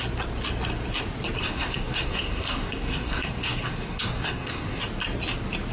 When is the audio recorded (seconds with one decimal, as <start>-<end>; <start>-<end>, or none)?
0.0-1.4; 4.8-5.7